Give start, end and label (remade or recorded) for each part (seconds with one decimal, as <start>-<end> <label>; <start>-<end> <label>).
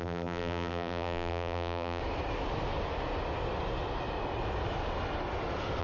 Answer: 0.0-2.0 remade; 2.0-5.8 recorded